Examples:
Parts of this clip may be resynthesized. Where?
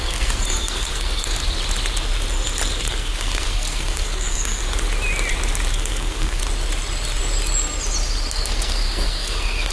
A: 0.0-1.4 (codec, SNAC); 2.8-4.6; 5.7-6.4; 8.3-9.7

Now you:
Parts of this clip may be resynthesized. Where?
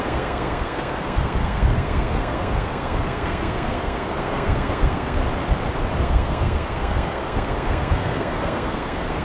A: 0.0-5.2 (codec, SNAC); 6.0-9.2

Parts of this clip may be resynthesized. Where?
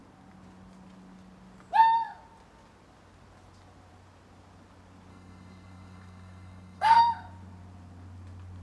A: 5.1-7.0 (codec, SNAC)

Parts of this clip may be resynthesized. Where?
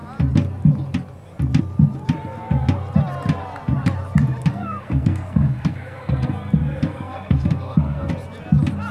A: 4.5-8.1 (codec, SNAC)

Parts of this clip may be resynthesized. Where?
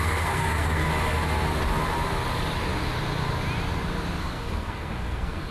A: 0.0-0.9 (codec, SNAC); 4.2-5.5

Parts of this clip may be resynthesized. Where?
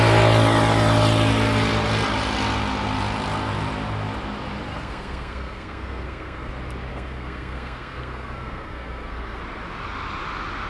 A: 4.7-6.5 (codec, SNAC); 6.9-9.4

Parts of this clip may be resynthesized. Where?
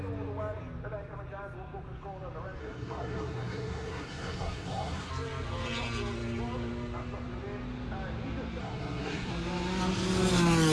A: 2.6-5.1 (codec, SNAC); 8.6-9.3